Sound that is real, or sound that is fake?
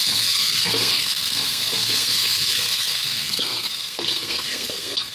fake